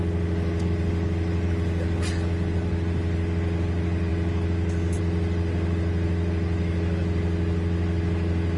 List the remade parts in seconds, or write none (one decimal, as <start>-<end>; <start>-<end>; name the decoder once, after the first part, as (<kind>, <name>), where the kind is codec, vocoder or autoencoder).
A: none